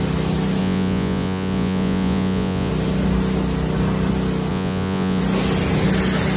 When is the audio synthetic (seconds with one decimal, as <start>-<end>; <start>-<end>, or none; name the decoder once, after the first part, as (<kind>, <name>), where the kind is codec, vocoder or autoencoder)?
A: 0.6-2.7 (vocoder, Vocos); 4.5-5.2